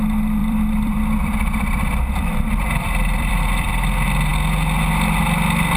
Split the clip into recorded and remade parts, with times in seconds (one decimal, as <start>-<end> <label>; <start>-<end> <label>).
0.0-0.4 recorded; 0.4-3.7 remade; 3.7-5.8 recorded